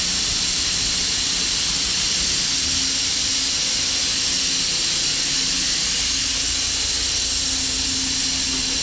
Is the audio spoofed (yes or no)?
no